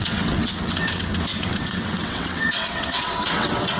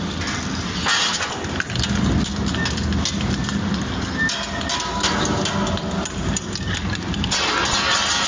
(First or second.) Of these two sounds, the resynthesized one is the first